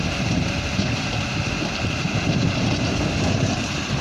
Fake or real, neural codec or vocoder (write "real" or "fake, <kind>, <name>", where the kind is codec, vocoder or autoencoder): fake, vocoder, BigVGAN v2